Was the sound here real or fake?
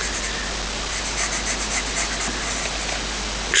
real